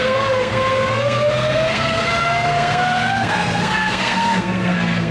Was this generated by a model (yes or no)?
yes